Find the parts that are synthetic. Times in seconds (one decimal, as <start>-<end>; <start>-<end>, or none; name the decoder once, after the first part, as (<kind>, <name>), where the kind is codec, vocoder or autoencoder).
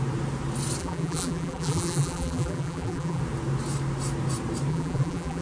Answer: 0.8-3.2 (vocoder, BigVGAN v2); 4.7-5.4